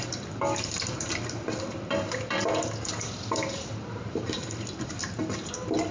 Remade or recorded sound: remade